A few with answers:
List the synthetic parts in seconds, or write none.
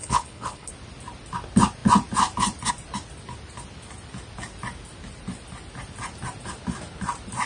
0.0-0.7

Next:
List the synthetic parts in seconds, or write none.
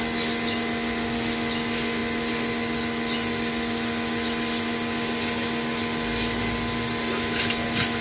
none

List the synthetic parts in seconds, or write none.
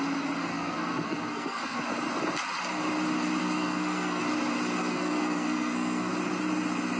0.5-1.8; 3.4-4.2; 4.8-6.1